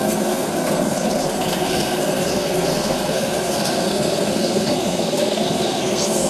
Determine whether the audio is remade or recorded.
remade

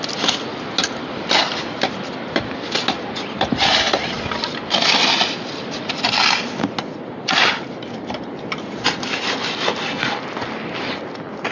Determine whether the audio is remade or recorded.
recorded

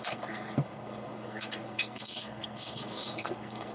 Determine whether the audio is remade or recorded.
remade